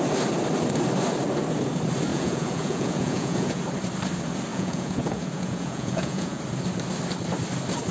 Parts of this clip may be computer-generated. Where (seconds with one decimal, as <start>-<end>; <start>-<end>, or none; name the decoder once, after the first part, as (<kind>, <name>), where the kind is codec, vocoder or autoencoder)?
2.1-3.6 (vocoder, Vocos); 4.5-6.4